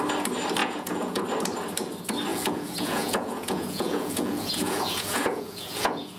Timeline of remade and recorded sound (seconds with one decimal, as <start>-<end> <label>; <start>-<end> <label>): 0.0-0.6 recorded; 0.6-1.2 remade; 1.2-2.3 recorded; 2.3-6.2 remade